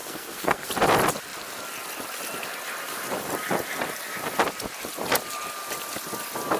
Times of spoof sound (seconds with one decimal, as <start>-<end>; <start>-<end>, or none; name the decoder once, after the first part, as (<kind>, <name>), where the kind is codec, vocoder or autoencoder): 0.0-0.7 (codec, SNAC)